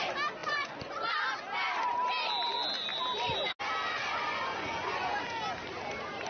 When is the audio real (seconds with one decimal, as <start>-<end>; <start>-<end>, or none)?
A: 0.0-0.4; 1.2-3.9; 5.2-6.3